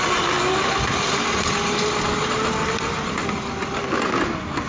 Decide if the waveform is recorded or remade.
recorded